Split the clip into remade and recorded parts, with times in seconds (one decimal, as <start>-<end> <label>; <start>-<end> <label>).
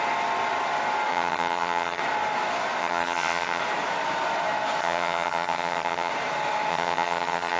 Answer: 0.0-1.1 recorded; 1.1-2.0 remade; 2.0-2.8 recorded; 2.8-3.6 remade; 3.6-4.8 recorded; 4.8-6.1 remade; 6.1-6.7 recorded; 6.7-7.6 remade